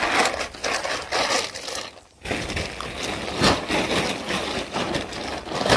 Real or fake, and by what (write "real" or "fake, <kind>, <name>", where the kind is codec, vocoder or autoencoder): real